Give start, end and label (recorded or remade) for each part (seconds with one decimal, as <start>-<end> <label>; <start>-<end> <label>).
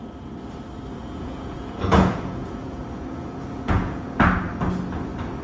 0.0-1.0 recorded; 1.0-4.2 remade; 4.2-5.4 recorded